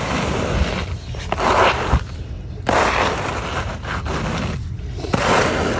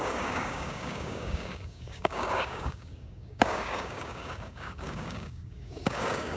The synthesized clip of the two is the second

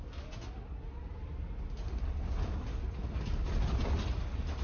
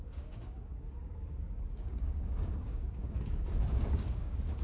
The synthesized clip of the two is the second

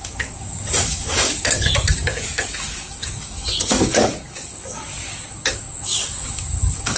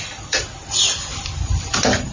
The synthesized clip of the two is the first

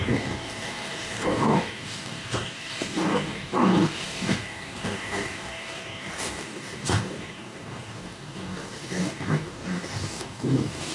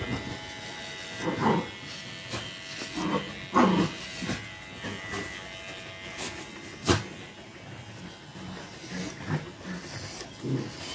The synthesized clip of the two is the first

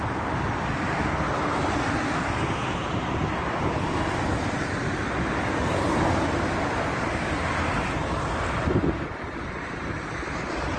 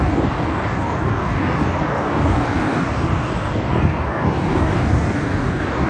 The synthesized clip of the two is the second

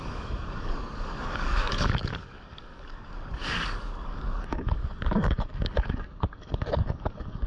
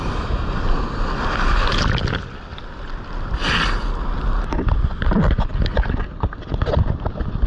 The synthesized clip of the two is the first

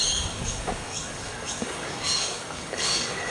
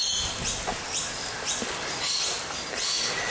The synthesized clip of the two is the first